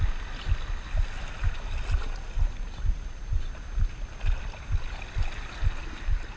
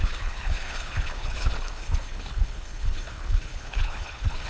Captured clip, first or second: first